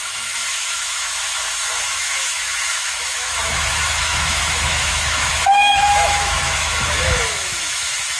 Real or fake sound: fake